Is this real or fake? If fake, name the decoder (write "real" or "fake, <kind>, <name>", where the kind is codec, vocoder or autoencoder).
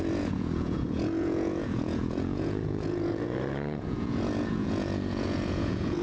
fake, vocoder, Vocos